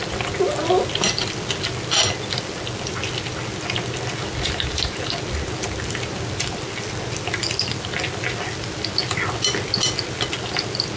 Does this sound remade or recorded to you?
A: recorded